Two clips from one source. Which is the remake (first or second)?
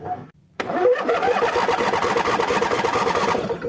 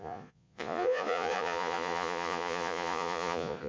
second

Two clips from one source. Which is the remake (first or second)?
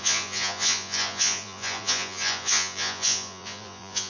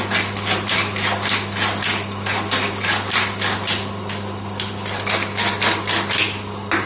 first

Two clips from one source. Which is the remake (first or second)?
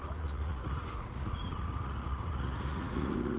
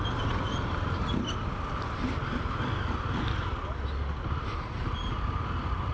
first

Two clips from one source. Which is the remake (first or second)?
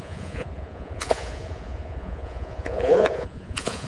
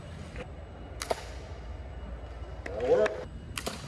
first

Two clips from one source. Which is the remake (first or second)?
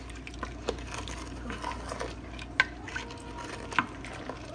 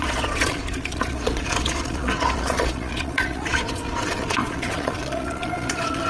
second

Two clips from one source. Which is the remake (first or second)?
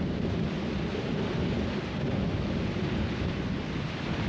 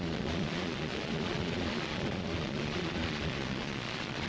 second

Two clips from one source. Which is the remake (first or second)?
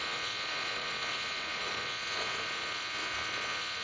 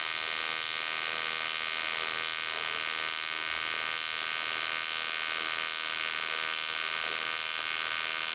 first